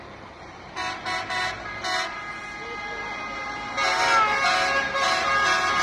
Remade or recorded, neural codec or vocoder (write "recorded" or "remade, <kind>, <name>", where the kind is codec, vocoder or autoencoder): recorded